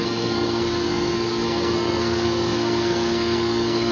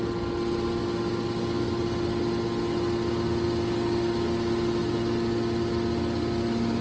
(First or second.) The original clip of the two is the second